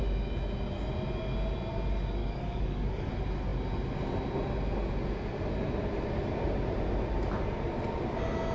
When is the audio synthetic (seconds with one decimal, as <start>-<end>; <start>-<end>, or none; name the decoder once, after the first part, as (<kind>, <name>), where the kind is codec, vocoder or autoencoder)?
2.2-3.1 (codec, DAC)